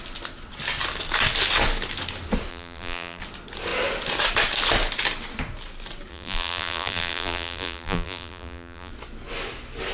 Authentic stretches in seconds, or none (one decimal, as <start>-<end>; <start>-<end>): 0.0-2.5; 3.2-6.1; 8.9-9.9